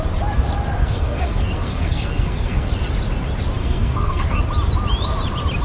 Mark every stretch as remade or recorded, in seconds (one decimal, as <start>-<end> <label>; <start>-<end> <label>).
0.0-0.8 recorded; 0.8-2.7 remade; 2.7-3.6 recorded; 3.6-4.4 remade; 4.4-5.6 recorded